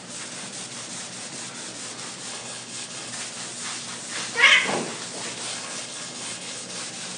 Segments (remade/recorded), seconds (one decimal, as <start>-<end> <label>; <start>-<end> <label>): 0.0-2.3 recorded; 2.3-3.1 remade; 3.1-5.5 recorded; 5.5-6.8 remade; 6.8-7.2 recorded